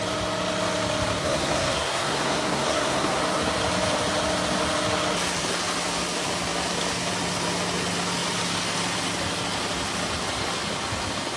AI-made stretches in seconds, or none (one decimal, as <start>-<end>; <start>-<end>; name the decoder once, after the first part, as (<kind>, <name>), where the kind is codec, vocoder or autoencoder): 1.2-3.2 (codec, SNAC)